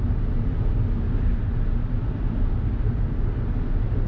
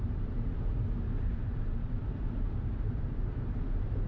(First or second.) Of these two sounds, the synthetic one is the second